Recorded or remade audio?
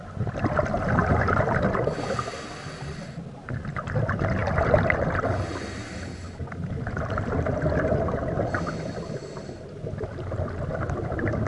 recorded